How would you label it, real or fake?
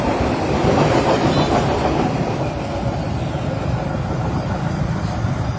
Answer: fake